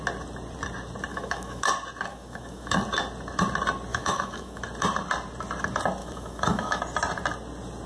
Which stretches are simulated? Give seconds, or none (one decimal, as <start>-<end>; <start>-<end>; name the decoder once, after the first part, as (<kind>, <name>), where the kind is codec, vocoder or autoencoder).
1.1-1.7 (autoencoder, DAC-VAE); 2.1-2.8; 3.9-4.6; 6.0-6.8